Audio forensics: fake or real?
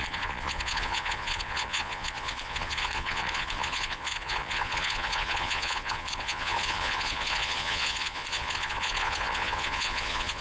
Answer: fake